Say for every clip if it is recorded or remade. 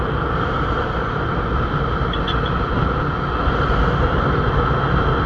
recorded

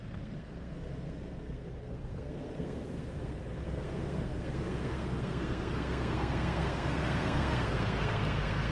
remade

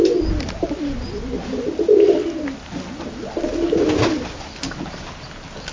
recorded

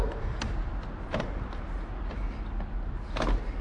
recorded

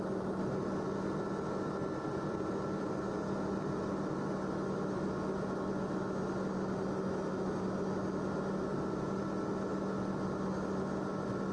recorded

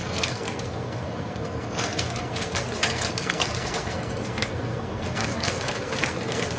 remade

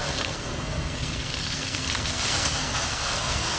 remade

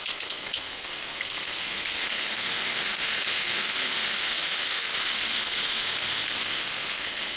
remade